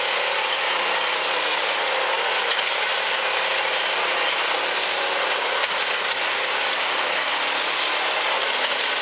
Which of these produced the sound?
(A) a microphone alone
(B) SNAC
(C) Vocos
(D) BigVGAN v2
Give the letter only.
A